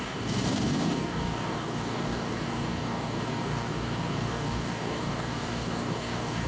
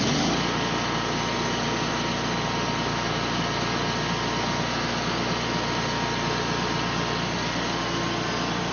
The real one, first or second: second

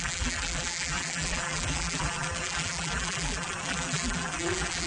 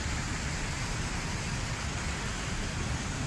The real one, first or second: second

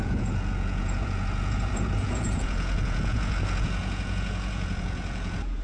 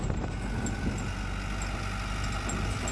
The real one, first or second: second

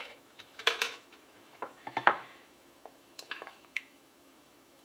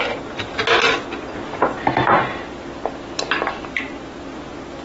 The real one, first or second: second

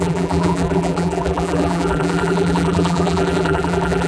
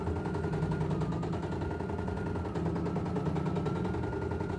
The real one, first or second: second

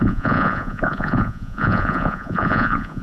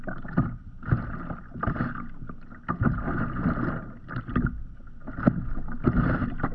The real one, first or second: second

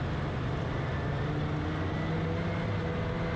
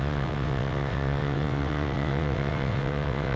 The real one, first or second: first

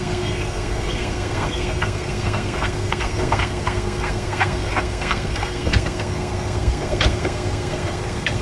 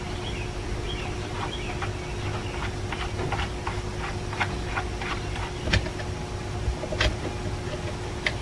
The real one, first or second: second